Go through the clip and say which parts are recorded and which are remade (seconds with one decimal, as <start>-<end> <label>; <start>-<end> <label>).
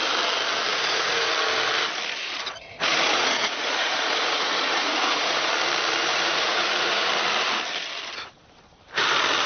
0.0-0.7 recorded; 0.7-1.3 remade; 1.3-2.2 recorded; 2.2-5.5 remade; 5.5-6.1 recorded; 6.1-7.1 remade; 7.1-9.5 recorded